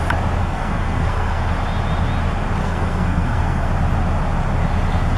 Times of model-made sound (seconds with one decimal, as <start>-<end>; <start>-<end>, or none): 0.4-1.5; 2.6-3.7